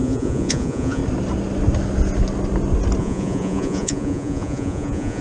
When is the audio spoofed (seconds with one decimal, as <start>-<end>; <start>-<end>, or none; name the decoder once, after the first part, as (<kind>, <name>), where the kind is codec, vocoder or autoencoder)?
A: 0.0-1.0 (vocoder, Vocos); 3.0-5.2